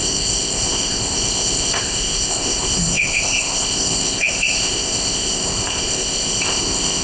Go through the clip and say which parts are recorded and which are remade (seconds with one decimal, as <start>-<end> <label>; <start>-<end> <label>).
0.0-7.0 remade